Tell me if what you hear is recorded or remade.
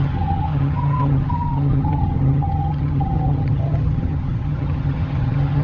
remade